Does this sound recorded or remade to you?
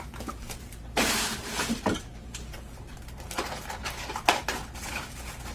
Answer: remade